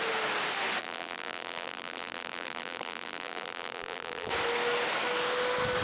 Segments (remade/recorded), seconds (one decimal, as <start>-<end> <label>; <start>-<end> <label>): 0.0-0.8 recorded; 0.8-4.3 remade; 4.3-5.8 recorded